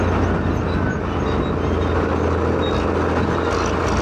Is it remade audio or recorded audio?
recorded